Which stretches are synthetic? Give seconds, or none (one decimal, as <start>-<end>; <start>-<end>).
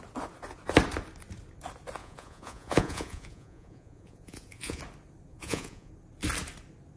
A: 2.0-4.8; 5.3-5.9